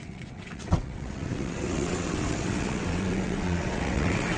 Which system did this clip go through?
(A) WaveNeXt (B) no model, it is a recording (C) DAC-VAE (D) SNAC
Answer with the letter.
A